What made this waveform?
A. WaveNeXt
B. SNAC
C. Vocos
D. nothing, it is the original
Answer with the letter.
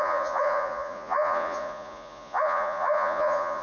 C